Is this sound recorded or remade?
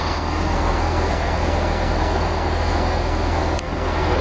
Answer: remade